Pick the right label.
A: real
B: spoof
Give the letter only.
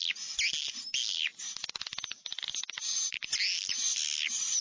A